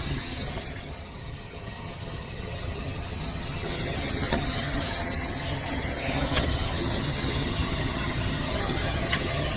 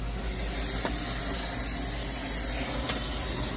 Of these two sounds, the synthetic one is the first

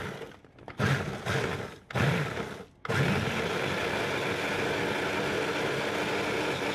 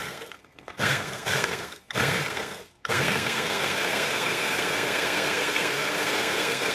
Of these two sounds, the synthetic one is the second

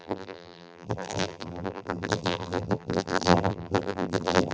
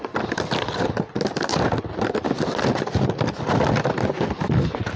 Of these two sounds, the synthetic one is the first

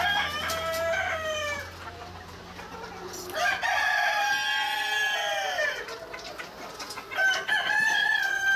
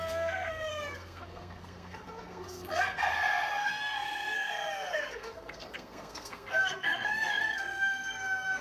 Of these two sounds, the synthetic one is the second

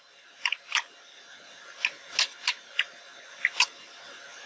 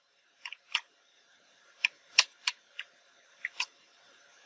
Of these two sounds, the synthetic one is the second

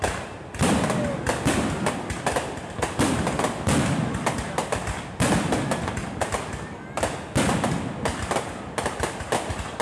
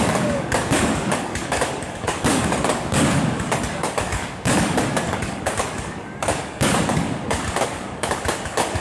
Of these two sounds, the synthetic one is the second